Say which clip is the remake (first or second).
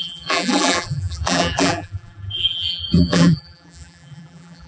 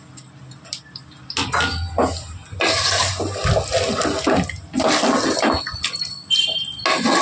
first